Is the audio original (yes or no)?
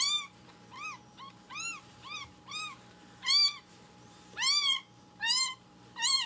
no